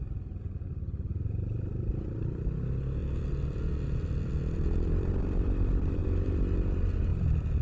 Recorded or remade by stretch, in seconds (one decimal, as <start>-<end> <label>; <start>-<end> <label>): 0.0-3.0 recorded; 3.0-5.3 remade; 5.3-7.1 recorded; 7.1-7.6 remade